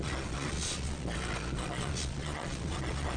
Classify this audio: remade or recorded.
remade